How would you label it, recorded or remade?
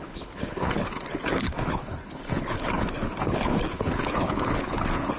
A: remade